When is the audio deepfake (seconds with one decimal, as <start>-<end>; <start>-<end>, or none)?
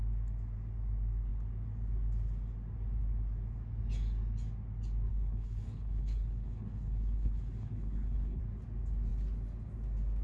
5.1-8.4